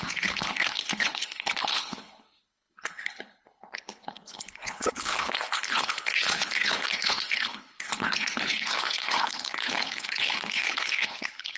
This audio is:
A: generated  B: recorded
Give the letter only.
A